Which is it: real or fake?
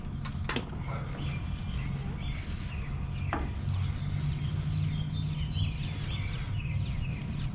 real